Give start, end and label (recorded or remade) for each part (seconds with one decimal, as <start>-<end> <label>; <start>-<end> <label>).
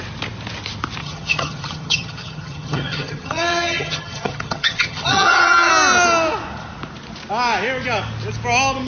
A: 0.0-1.0 recorded; 1.0-5.7 remade; 5.7-8.9 recorded